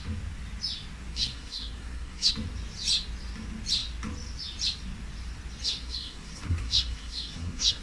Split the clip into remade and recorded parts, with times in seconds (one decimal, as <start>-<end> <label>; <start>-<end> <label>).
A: 0.0-1.1 recorded; 1.1-2.3 remade; 2.3-5.6 recorded; 5.6-7.8 remade